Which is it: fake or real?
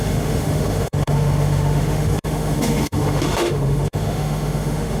fake